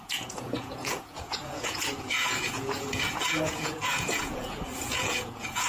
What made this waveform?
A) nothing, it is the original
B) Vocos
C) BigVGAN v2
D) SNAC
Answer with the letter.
B